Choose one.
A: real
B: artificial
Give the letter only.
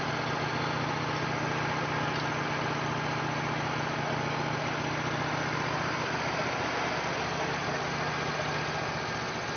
A